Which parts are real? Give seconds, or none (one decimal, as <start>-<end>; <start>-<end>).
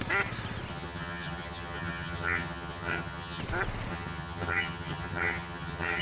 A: 0.0-0.7; 3.4-3.9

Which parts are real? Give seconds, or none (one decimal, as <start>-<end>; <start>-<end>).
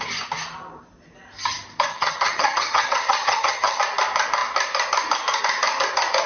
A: 0.0-1.9; 3.8-6.3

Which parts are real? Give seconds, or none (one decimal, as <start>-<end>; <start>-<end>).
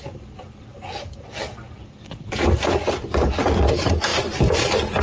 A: 0.0-5.0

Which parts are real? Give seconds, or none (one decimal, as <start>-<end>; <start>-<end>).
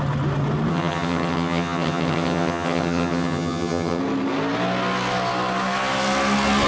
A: 0.0-0.7; 4.0-6.7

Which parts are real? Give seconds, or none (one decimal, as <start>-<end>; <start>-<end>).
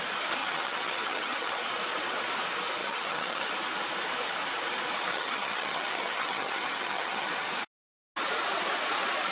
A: 0.0-0.4; 1.6-2.8; 3.5-5.1; 7.3-9.3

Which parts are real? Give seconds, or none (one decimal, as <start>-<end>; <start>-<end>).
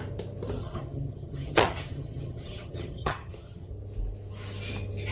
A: 0.0-0.6; 3.7-5.1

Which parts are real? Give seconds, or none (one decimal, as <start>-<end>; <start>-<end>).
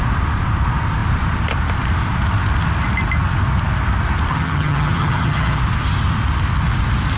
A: 0.0-4.3; 5.6-7.2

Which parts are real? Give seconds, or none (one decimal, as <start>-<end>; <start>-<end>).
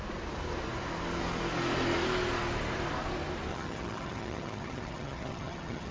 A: 0.0-3.5